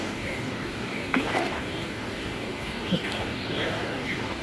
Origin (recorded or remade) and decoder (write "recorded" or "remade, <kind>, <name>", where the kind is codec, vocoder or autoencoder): remade, codec, DAC